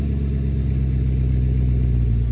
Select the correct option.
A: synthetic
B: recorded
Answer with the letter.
B